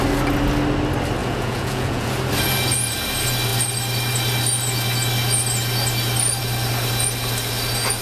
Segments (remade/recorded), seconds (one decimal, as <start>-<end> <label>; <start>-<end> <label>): 0.0-1.2 recorded; 1.2-2.1 remade; 2.1-8.0 recorded